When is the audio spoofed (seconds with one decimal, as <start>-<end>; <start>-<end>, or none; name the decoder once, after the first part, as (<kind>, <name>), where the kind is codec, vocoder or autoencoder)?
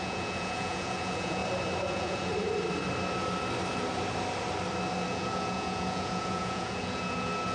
0.0-1.4 (vocoder, Vocos); 1.9-2.3; 5.1-7.5